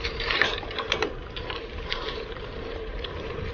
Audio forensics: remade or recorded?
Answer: remade